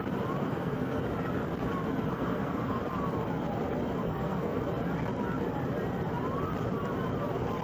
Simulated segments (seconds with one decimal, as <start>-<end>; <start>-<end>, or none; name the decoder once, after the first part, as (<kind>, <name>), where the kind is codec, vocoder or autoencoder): 0.4-1.0 (codec, SNAC); 2.1-2.8; 4.0-4.6